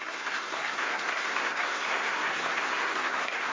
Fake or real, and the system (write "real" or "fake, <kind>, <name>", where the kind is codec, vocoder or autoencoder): fake, codec, SNAC